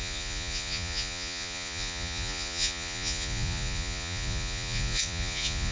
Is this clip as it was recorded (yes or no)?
no